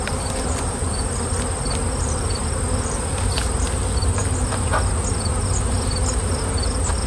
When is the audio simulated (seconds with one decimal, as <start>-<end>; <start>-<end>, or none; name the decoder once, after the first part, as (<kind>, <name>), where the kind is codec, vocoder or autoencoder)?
none